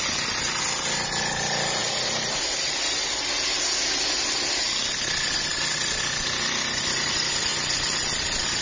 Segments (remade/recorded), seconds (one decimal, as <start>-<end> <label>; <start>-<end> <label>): 0.0-8.6 recorded

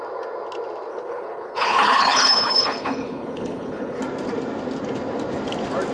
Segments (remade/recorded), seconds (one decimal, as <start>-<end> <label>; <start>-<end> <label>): 0.0-0.9 recorded; 0.9-4.0 remade; 4.0-5.9 recorded

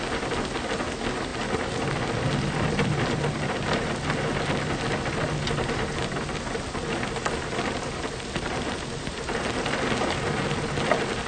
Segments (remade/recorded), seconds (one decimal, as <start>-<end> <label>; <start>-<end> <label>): 0.0-11.3 recorded

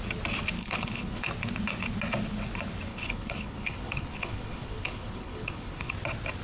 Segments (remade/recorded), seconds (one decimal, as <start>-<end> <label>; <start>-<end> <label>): 0.0-0.6 recorded; 0.6-1.3 remade; 1.3-2.9 recorded; 2.9-5.9 remade; 5.9-6.4 recorded